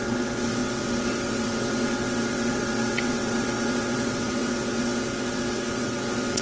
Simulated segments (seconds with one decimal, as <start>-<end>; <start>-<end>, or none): 0.0-6.4